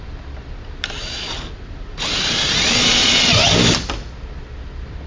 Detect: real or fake real